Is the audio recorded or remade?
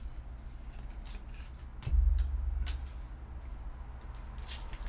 recorded